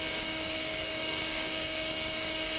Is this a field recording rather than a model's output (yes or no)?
no